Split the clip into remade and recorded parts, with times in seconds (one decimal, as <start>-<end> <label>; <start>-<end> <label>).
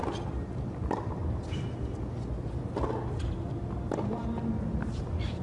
0.0-5.4 recorded